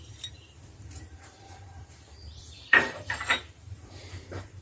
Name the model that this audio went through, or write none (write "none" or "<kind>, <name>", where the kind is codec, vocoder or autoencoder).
vocoder, BigVGAN v2